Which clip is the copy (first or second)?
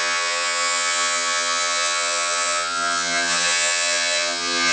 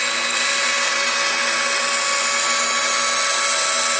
first